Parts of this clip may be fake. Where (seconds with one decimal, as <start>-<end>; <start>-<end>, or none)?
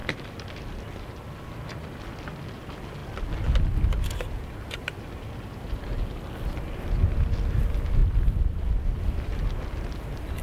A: none